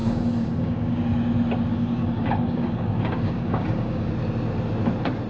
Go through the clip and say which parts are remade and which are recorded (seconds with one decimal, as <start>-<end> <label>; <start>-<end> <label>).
0.0-1.0 remade; 1.0-1.7 recorded; 1.7-4.1 remade; 4.1-5.3 recorded